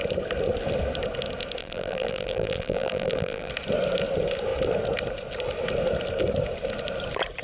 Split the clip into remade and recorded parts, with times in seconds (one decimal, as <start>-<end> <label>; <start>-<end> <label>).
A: 0.0-1.6 recorded; 1.6-3.5 remade; 3.5-7.4 recorded